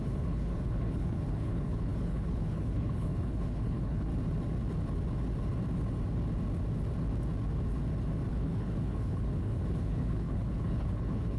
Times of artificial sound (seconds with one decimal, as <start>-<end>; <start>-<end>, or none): 0.0-4.1; 8.3-11.4